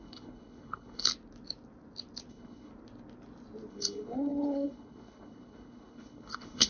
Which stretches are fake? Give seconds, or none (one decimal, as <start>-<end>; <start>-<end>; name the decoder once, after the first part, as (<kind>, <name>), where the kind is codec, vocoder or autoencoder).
0.0-1.1 (codec, HILCodec); 2.3-2.7; 3.7-6.7